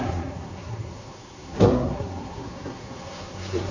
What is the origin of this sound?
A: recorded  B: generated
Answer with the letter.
B